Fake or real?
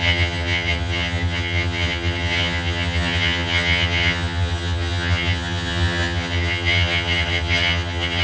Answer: fake